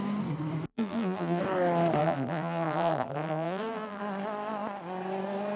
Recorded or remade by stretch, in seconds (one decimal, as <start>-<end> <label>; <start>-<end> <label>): 0.0-0.7 recorded; 0.7-1.4 remade; 1.4-2.0 recorded; 2.0-4.0 remade; 4.0-5.6 recorded